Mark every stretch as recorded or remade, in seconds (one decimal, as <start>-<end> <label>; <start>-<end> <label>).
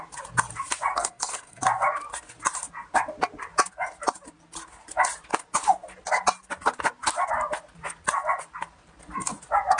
0.0-0.9 recorded; 0.9-1.6 remade; 1.6-9.8 recorded